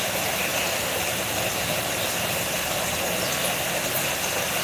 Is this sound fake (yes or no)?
no